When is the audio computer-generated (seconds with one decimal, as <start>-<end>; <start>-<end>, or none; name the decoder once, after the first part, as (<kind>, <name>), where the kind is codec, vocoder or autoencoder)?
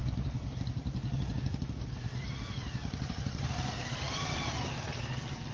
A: none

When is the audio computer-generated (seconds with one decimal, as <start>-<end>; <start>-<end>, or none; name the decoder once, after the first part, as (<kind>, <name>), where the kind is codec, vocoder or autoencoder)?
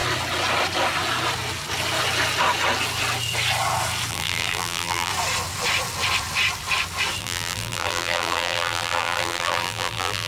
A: 4.1-5.1 (vocoder, BigVGAN v2); 7.2-10.3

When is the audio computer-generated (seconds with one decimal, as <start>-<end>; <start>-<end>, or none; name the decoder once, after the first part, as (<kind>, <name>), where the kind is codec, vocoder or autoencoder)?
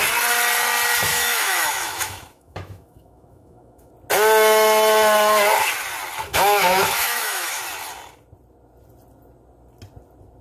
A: 1.1-3.9 (autoencoder, DAC-VAE); 6.3-7.6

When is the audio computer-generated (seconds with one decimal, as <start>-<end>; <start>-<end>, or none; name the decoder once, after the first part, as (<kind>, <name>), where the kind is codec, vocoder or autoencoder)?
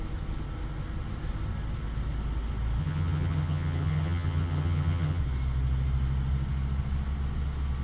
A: 2.8-5.2 (vocoder, HiFi-GAN)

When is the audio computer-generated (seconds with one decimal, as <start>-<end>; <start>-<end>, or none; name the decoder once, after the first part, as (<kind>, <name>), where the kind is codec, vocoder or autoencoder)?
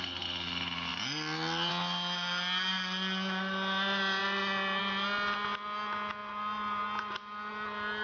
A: none